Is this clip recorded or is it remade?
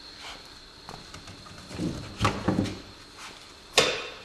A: recorded